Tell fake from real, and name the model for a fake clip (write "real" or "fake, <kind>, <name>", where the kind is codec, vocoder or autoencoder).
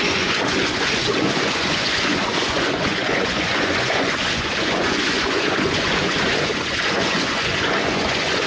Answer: fake, vocoder, Vocos